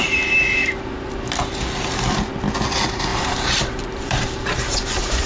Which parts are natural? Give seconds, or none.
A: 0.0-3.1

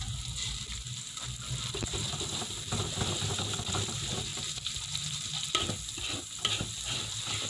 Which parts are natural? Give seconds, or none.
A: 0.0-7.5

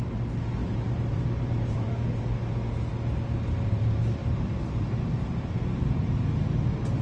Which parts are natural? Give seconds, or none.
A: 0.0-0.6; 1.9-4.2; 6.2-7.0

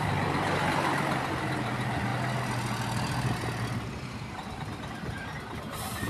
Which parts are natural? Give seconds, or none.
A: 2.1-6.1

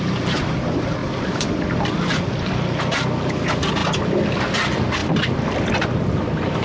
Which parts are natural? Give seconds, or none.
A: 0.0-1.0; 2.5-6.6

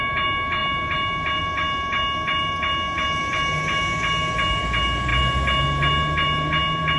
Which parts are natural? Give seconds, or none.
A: 0.0-7.0